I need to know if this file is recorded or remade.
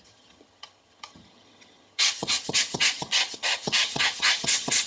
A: remade